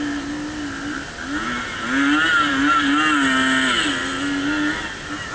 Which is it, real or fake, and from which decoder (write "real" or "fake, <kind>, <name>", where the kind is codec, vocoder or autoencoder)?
real